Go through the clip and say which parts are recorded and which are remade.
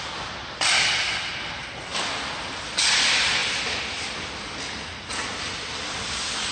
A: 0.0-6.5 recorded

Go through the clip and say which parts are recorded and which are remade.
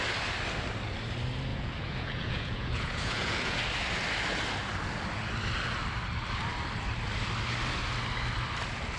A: 0.0-1.5 recorded; 1.5-3.6 remade; 3.6-9.0 recorded